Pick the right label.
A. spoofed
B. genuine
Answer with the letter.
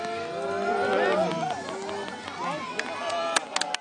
B